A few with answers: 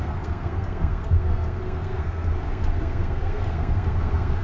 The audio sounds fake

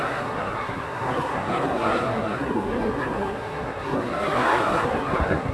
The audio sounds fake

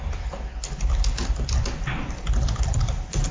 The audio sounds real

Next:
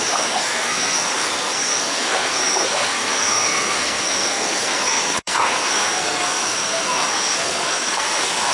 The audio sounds fake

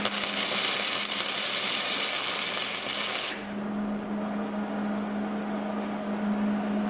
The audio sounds real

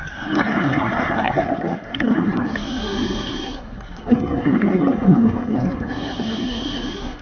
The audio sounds fake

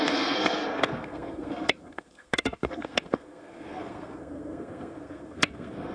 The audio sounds fake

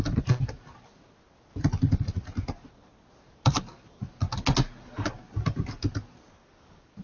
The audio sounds real